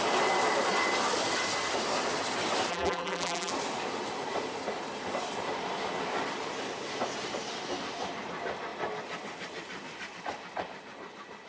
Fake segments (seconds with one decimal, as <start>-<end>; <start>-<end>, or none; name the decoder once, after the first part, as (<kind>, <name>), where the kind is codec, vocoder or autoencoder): 2.7-3.5 (vocoder, BigVGAN v2)